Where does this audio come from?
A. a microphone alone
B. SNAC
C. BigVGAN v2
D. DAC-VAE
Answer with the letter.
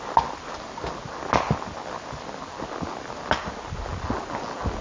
A